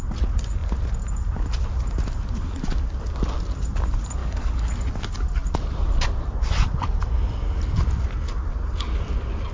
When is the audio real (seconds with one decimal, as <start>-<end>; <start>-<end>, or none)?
0.0-4.2; 4.7-9.5